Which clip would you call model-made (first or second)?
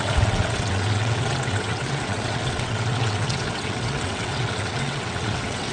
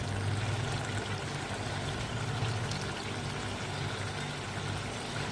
first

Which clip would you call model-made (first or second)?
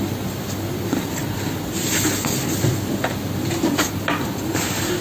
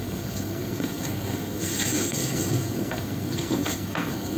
second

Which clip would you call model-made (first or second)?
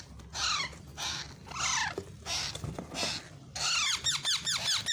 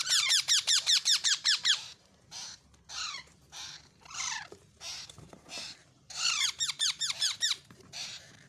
second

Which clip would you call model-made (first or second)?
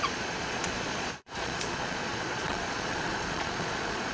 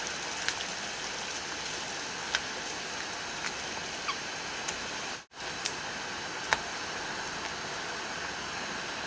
first